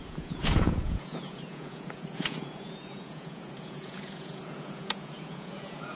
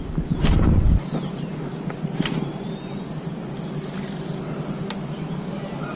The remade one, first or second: first